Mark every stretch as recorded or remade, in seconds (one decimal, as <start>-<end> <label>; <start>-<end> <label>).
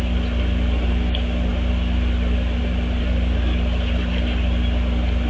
0.0-5.3 recorded